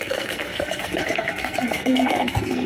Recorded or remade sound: remade